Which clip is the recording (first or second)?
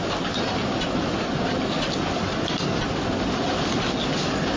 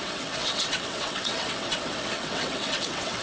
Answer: first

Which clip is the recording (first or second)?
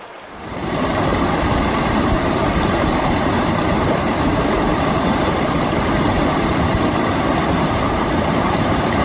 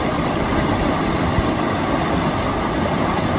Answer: second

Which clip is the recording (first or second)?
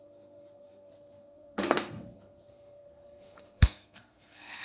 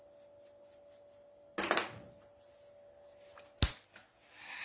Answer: second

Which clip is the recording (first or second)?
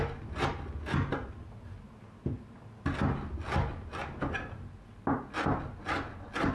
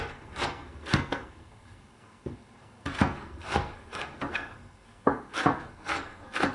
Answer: first